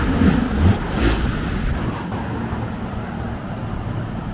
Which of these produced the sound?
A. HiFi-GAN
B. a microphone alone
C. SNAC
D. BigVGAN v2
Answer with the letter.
B